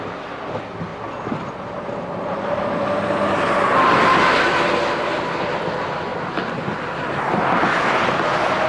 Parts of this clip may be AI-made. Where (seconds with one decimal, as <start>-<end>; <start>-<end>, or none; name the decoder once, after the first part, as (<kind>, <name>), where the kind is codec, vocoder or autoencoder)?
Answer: none